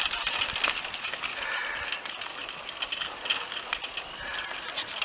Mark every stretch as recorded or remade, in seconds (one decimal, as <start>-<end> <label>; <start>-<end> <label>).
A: 0.0-5.0 recorded